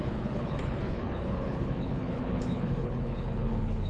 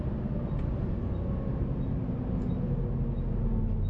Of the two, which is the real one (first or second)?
second